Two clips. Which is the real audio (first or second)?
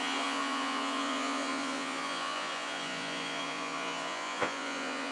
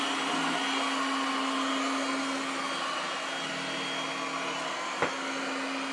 second